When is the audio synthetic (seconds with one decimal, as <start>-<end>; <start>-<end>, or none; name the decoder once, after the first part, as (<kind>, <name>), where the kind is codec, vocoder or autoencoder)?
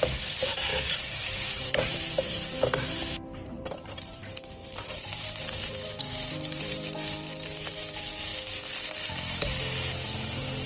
0.0-8.3 (vocoder, BigVGAN v2); 9.9-10.7